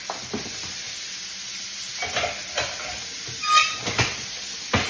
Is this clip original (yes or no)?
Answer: yes